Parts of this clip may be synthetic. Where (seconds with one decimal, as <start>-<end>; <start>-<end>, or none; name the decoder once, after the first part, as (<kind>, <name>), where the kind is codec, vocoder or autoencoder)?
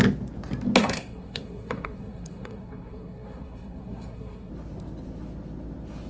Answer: 0.8-4.5 (codec, SNAC)